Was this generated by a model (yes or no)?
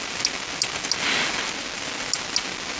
no